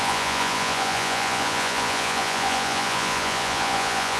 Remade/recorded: remade